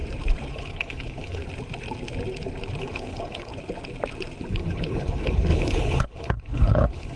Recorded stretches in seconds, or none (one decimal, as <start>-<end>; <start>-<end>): 0.0-0.5; 1.4-2.8; 3.5-4.5